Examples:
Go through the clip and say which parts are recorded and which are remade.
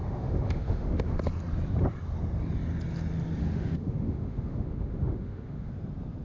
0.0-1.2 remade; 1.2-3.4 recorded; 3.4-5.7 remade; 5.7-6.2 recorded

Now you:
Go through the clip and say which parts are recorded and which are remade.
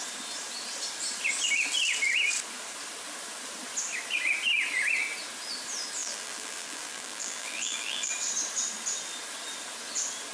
0.0-6.0 recorded; 6.0-8.1 remade; 8.1-10.3 recorded